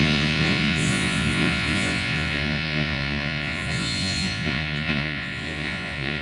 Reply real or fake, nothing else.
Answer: fake